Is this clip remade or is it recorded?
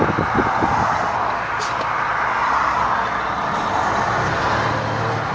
recorded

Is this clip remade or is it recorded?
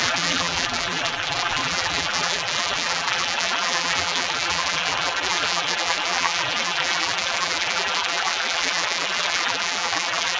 remade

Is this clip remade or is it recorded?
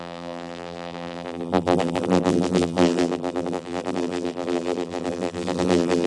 remade